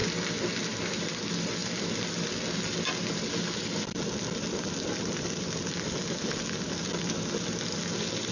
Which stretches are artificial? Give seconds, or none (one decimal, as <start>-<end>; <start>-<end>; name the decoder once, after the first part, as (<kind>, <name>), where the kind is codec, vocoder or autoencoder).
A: none